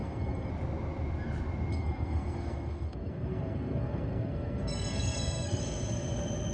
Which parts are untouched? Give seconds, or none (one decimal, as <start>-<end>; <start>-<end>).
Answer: 0.5-1.7; 5.6-6.5